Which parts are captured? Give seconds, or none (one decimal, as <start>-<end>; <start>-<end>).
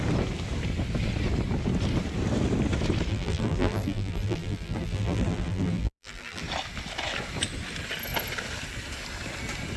0.0-3.1; 6.4-9.8